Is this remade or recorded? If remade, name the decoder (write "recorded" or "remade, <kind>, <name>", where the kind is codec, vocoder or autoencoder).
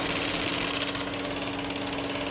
recorded